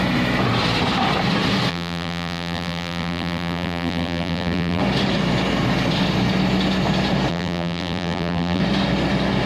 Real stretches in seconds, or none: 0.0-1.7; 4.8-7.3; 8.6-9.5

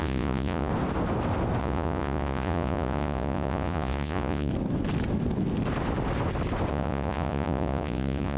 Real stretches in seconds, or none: 0.7-1.6; 4.5-6.7